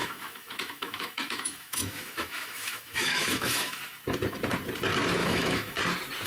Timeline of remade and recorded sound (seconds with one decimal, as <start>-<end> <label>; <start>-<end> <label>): 0.0-3.8 remade; 3.8-5.2 recorded; 5.2-5.8 remade; 5.8-6.3 recorded

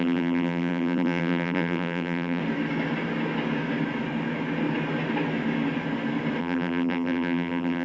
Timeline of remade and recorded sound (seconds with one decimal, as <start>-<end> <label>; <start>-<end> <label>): 0.0-2.4 remade; 2.4-6.4 recorded; 6.4-7.8 remade

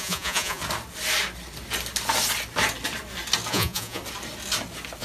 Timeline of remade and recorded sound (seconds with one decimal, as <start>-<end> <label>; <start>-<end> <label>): 0.0-0.6 remade; 0.6-3.5 recorded; 3.5-4.0 remade; 4.0-5.0 recorded

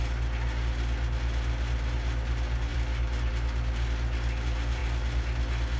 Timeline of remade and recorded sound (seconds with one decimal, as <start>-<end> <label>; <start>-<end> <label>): 0.0-2.7 recorded; 2.7-3.3 remade; 3.3-5.8 recorded

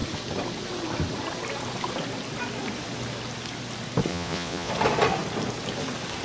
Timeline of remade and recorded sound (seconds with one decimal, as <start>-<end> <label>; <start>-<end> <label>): 0.0-4.1 recorded; 4.1-4.7 remade; 4.7-6.2 recorded

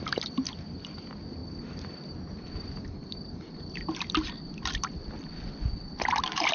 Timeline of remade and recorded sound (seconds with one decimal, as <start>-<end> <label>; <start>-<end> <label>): 0.0-6.5 recorded